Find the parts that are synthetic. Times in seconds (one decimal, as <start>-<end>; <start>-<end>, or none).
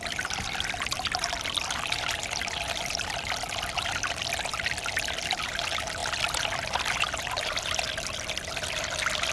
none